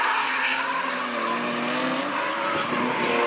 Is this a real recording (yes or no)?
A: yes